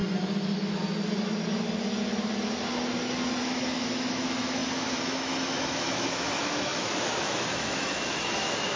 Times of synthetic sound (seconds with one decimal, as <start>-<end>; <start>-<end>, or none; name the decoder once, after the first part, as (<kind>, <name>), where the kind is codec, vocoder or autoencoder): 3.4-8.8 (autoencoder, DAC-VAE)